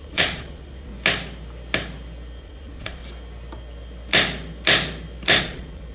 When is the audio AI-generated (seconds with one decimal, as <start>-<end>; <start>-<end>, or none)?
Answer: 0.0-0.9; 2.4-3.0; 5.4-5.9